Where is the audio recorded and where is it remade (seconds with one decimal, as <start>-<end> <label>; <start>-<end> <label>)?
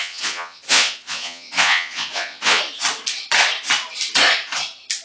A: 0.0-2.6 remade; 2.6-5.0 recorded